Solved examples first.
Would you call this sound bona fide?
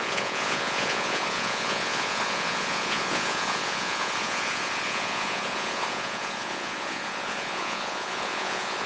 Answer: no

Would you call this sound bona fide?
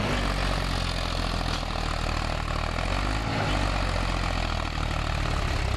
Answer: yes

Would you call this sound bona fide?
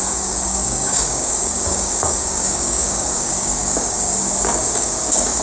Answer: no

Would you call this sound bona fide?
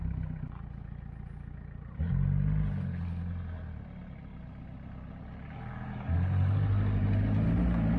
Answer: yes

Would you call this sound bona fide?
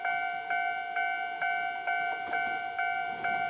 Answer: yes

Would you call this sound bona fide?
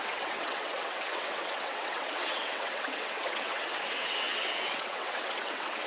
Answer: no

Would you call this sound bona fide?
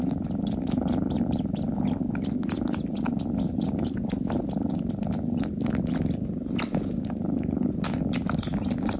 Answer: yes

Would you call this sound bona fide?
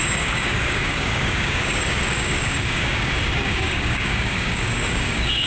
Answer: no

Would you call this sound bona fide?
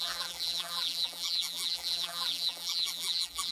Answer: no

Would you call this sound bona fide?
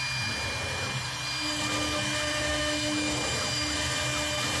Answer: yes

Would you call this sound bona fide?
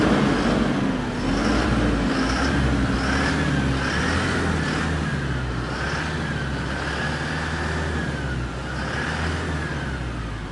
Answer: yes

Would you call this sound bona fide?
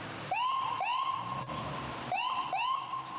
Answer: no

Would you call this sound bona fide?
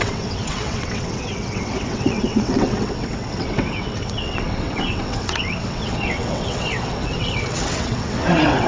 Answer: no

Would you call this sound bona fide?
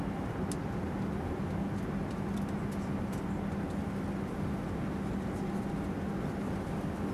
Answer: yes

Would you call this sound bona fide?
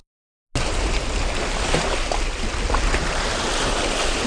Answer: yes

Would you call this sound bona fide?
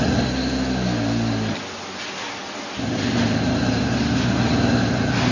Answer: yes